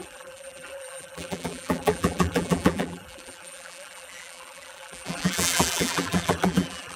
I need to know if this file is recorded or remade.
remade